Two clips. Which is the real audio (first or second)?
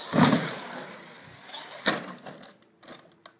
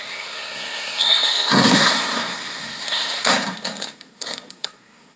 first